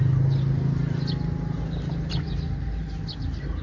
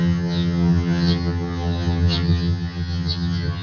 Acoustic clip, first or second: first